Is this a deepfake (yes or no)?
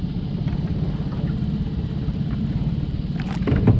yes